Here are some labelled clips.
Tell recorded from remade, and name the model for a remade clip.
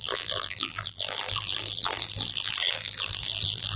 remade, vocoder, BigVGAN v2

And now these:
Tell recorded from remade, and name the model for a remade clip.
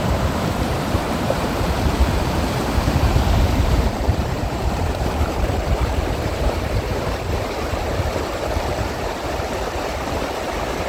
remade, vocoder, BigVGAN v2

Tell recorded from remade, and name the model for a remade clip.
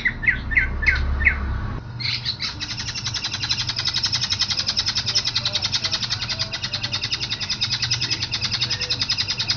recorded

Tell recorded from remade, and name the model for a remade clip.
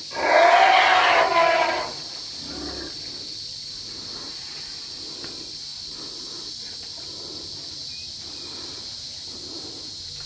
recorded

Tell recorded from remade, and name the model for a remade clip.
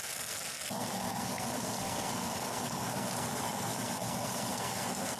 remade, codec, SNAC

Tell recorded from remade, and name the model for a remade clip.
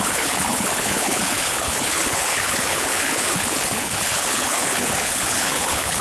remade, codec, HILCodec